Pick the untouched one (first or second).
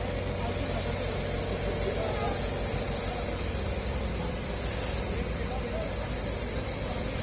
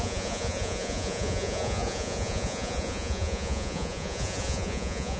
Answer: first